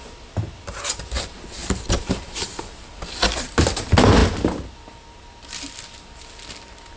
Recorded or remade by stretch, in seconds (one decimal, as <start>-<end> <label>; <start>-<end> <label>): 0.0-1.6 recorded; 1.6-3.0 remade; 3.0-7.0 recorded